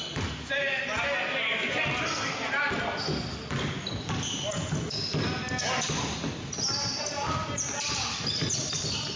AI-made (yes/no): no